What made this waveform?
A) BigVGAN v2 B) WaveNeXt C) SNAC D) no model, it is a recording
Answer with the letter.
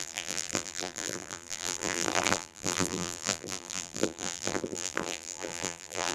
A